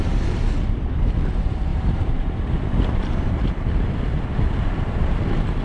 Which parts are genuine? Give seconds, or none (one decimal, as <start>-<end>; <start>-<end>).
0.0-1.7; 5.1-5.6